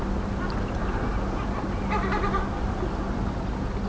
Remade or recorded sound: recorded